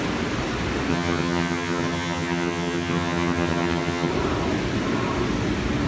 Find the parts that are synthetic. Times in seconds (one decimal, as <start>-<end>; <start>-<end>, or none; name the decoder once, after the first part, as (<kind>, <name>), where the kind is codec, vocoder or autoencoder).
0.9-4.1 (vocoder, HiFi-GAN)